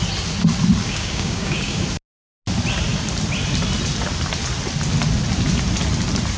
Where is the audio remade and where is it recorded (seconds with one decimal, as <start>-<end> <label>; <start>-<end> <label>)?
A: 0.0-0.8 recorded; 0.8-1.8 remade; 1.8-6.4 recorded